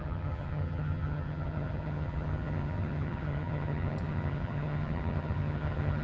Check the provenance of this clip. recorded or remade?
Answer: remade